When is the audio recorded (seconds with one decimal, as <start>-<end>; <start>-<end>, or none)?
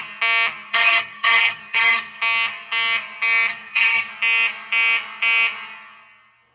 0.0-0.7; 2.2-3.5; 4.1-6.5